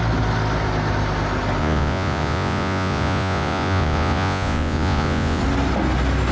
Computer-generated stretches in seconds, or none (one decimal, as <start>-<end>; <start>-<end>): 1.6-5.4